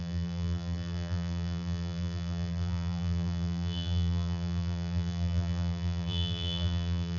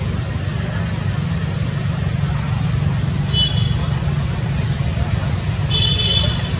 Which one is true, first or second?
second